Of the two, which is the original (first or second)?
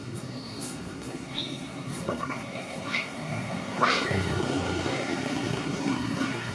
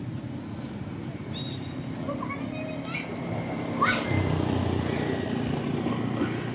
second